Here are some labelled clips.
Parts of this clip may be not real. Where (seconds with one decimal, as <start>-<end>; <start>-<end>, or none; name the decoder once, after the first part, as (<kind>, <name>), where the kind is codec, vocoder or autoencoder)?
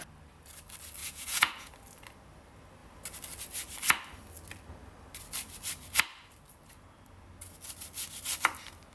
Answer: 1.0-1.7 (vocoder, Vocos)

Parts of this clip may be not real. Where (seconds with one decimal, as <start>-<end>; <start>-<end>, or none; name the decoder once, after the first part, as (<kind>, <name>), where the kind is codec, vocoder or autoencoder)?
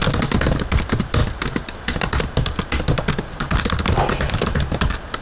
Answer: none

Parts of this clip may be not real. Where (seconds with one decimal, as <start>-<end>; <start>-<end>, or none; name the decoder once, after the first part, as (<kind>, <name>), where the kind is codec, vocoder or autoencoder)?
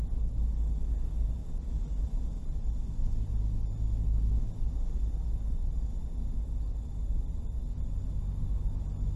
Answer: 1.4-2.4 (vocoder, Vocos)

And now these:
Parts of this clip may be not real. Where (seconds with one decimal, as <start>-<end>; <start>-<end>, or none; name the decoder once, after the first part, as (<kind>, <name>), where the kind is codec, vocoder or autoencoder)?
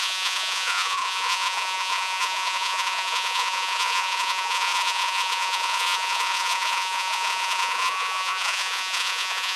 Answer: 0.0-9.6 (vocoder, Vocos)